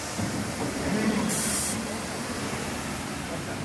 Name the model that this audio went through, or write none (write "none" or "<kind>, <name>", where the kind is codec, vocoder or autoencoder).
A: none